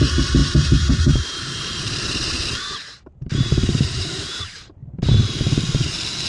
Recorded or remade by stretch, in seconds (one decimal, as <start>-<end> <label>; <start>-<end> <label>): 0.0-4.8 remade; 4.8-6.3 recorded